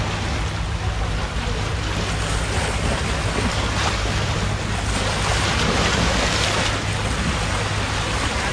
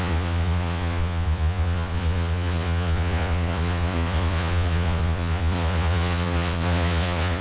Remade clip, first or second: second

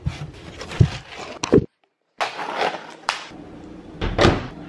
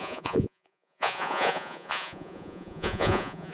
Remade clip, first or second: second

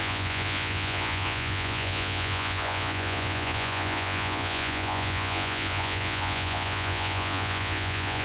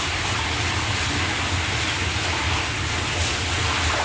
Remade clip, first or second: first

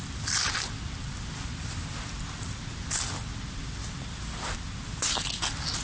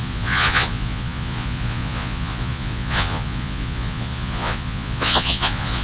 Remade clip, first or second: second